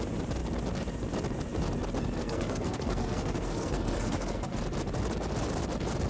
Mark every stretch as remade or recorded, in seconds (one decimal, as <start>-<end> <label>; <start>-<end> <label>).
0.0-2.2 recorded; 2.2-4.6 remade; 4.6-6.1 recorded